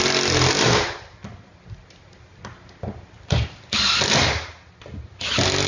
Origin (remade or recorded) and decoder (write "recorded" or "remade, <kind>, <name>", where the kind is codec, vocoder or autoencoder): recorded